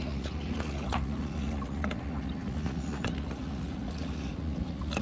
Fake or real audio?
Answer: fake